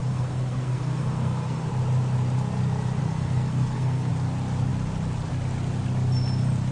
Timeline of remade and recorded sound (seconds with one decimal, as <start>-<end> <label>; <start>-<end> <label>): 0.0-1.7 remade; 1.7-3.0 recorded; 3.0-4.1 remade; 4.1-6.7 recorded